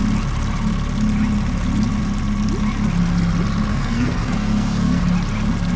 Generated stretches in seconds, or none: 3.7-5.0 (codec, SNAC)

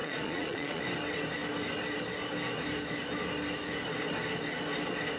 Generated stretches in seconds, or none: 0.0-0.8 (vocoder, Vocos)

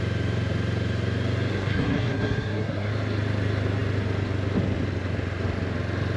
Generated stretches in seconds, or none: 1.5-2.9 (codec, SNAC)

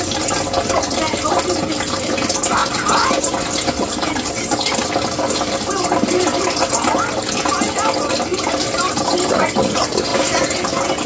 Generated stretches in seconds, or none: 2.6-7.3 (vocoder, BigVGAN v2); 8.3-8.9

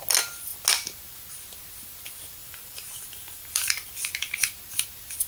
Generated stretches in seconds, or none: 2.4-3.9 (vocoder, BigVGAN v2)

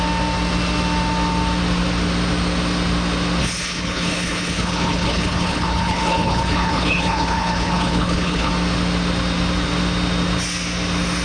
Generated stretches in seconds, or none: 3.4-8.5 (codec, HILCodec)